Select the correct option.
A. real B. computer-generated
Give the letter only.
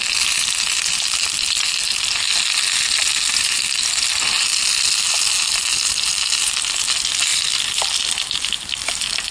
A